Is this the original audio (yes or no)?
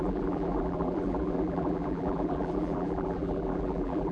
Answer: no